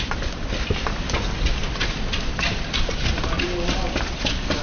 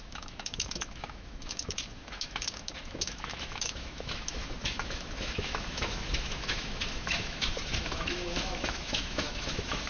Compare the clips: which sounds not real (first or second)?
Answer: second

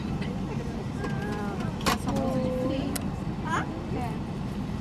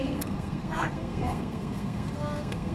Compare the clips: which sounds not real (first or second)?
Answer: second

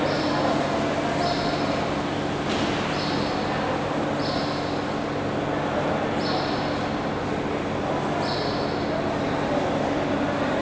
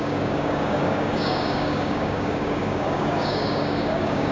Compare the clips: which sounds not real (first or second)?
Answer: second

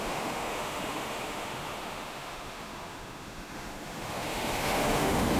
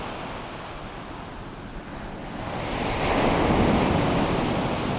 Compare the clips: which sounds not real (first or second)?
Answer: first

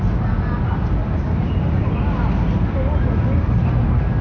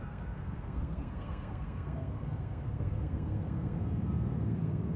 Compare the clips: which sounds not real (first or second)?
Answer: second